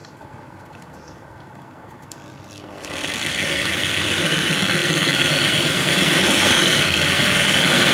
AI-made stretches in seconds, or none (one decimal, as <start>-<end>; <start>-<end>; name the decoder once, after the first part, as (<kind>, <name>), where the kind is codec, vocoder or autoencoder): 0.0-7.9 (codec, SNAC)